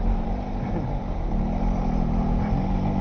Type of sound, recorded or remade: recorded